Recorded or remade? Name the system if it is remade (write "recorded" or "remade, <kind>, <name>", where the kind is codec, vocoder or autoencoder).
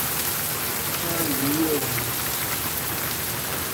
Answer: recorded